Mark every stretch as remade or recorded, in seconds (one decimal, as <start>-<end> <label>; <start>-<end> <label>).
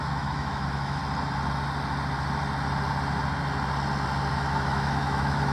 0.0-1.0 remade; 1.0-4.3 recorded; 4.3-5.5 remade